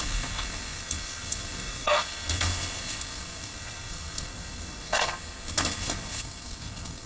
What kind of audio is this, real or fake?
fake